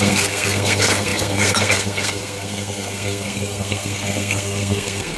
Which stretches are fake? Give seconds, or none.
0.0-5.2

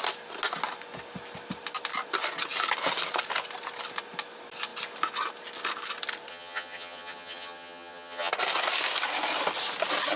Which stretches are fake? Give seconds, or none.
6.3-8.3

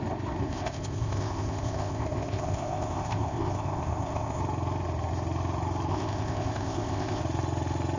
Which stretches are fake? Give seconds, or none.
0.4-4.4; 5.9-7.2

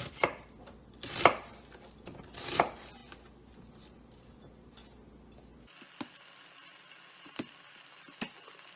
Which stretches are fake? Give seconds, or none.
none

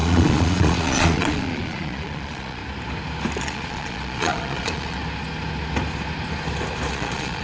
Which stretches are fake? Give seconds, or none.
0.0-2.6; 3.4-5.0; 6.9-7.4